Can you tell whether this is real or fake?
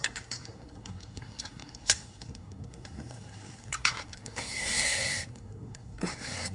fake